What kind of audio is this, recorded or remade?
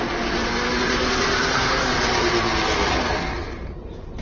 recorded